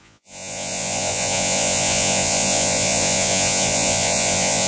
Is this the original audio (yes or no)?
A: no